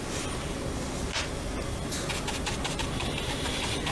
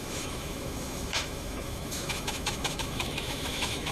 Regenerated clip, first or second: second